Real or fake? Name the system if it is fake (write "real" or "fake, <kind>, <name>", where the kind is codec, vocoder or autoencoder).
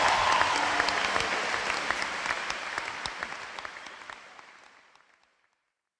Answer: real